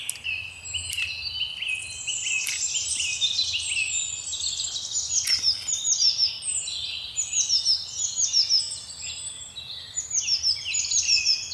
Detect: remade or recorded recorded